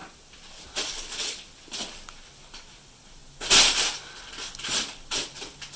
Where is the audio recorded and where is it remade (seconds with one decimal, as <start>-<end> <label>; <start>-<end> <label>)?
0.0-5.8 recorded